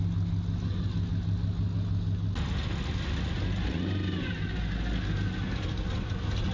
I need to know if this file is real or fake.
real